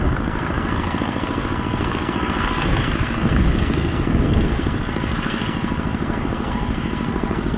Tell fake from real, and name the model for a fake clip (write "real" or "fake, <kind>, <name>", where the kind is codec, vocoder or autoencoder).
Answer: fake, codec, SNAC